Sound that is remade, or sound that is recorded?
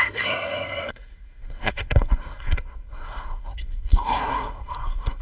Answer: remade